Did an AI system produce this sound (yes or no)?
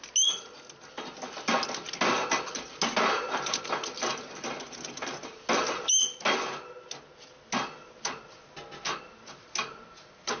no